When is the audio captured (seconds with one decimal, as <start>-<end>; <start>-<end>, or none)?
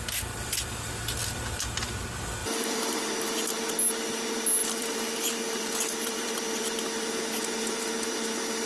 0.0-2.4; 3.1-4.6; 6.6-8.7